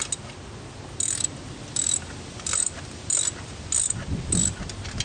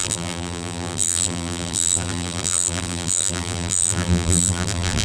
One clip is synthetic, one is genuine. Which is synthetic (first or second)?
second